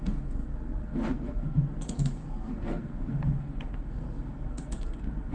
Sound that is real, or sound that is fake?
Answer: fake